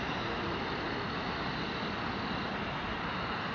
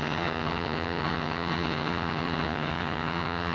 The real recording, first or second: first